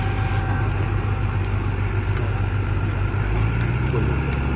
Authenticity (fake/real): fake